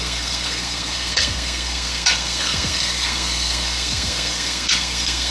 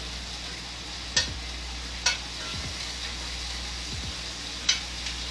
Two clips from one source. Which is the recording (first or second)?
second